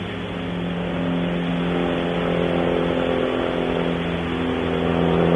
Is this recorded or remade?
recorded